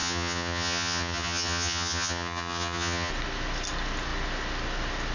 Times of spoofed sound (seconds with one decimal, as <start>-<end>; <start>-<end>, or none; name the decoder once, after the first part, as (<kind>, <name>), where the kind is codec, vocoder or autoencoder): 0.0-3.1 (vocoder, HiFi-GAN)